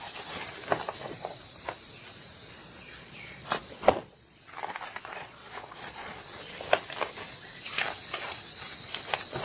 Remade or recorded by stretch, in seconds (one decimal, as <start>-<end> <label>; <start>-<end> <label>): 0.0-2.6 recorded; 2.6-4.4 remade; 4.4-4.9 recorded; 4.9-6.2 remade; 6.2-9.4 recorded